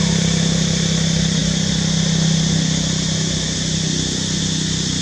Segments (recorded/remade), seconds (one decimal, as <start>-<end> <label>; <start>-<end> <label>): 0.0-5.0 recorded